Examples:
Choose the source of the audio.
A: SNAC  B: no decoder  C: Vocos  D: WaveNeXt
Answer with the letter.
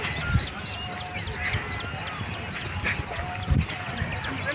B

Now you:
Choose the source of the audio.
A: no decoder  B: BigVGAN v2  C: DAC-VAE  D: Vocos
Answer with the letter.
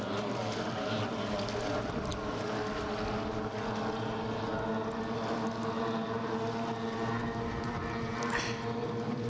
A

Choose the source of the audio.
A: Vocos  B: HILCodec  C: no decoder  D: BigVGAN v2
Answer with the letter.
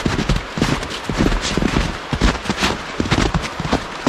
C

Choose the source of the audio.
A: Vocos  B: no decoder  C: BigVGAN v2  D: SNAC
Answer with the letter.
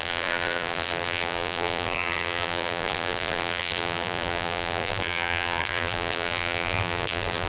C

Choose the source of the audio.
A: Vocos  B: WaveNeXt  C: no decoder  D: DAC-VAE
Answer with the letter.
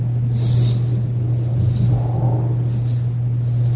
C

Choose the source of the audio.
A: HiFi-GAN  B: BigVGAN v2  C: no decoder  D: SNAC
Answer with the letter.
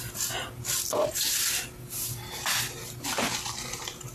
C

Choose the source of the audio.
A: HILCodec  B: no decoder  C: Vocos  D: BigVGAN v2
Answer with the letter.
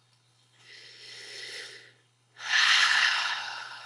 A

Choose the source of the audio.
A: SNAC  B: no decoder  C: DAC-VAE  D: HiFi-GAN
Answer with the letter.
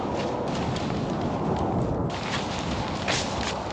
B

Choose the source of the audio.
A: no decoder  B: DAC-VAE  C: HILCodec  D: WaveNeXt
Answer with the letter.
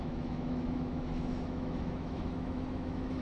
B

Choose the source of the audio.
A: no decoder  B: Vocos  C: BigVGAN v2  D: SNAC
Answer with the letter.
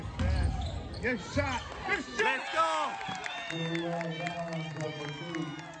A